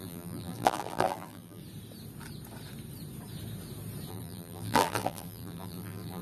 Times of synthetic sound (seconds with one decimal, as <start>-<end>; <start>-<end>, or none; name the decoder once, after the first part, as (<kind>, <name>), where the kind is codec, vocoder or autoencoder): 0.0-1.6 (vocoder, BigVGAN v2); 4.1-6.2